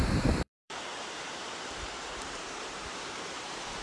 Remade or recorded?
remade